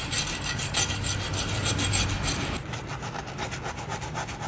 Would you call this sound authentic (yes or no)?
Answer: yes